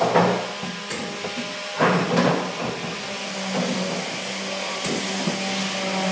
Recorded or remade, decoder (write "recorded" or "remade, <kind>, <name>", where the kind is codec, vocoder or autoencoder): recorded